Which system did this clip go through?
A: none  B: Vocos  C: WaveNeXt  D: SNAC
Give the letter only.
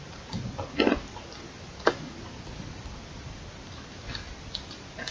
A